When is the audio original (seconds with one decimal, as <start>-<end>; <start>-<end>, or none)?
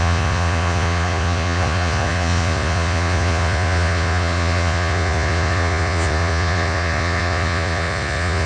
none